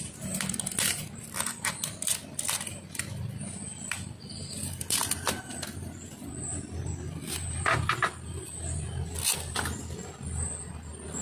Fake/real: real